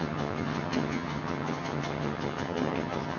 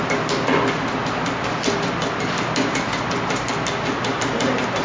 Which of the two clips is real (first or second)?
second